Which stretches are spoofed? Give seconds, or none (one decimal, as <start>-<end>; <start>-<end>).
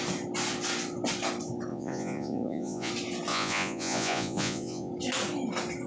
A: 1.7-2.9; 3.3-4.9